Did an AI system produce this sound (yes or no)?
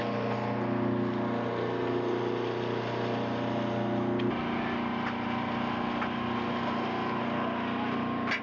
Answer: no